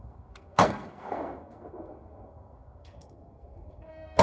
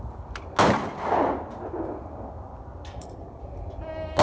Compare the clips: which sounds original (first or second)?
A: second